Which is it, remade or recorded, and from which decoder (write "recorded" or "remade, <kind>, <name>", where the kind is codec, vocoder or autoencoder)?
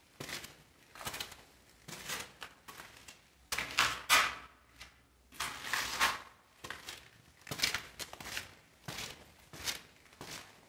recorded